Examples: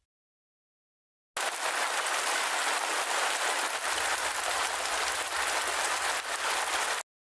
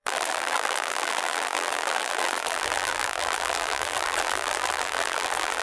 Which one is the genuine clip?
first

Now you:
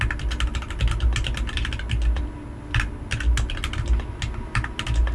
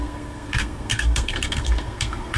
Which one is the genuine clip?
first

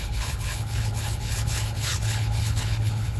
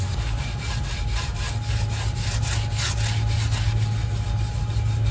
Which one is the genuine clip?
second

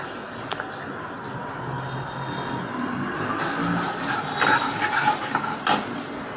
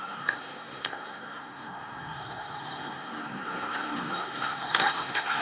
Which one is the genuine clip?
first